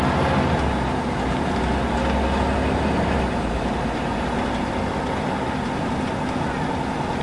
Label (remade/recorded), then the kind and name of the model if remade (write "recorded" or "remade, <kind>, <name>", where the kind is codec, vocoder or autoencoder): recorded